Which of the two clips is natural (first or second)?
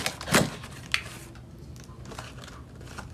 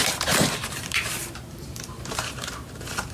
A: first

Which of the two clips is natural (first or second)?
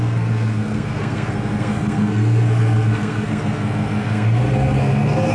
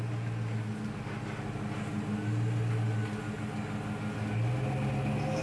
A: second